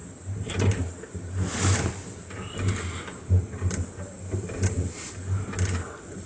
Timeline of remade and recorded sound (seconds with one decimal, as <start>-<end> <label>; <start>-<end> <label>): 0.0-6.3 recorded